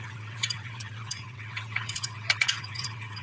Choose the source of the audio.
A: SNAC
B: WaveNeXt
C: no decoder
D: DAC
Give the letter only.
B